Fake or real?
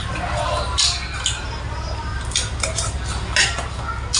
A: real